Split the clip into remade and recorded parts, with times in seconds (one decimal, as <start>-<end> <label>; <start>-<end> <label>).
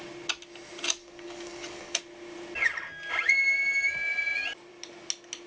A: 0.0-1.0 recorded; 1.0-2.0 remade; 2.0-5.5 recorded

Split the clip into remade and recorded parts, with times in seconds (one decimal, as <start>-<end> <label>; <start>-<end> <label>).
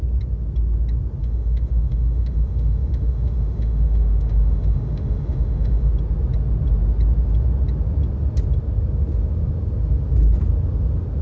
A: 0.0-1.2 recorded; 1.2-5.9 remade; 5.9-11.2 recorded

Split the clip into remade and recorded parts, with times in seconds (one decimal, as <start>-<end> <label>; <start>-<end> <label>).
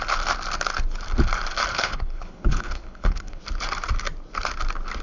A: 0.0-1.7 recorded; 1.7-3.4 remade; 3.4-5.0 recorded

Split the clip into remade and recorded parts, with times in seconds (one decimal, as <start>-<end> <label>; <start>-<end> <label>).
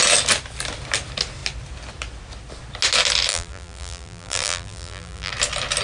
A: 0.0-3.3 recorded; 3.3-5.3 remade; 5.3-5.8 recorded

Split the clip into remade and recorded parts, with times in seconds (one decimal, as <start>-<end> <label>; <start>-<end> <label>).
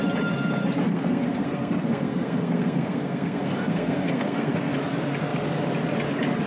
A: 0.0-0.8 recorded; 0.8-4.7 remade; 4.7-6.5 recorded